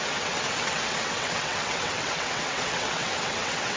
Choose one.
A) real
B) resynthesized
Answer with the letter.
B